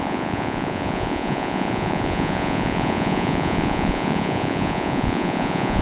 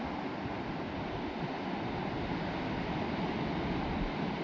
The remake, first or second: first